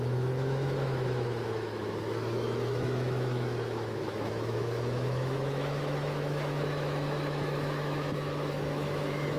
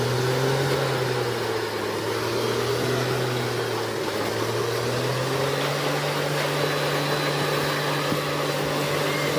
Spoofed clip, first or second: first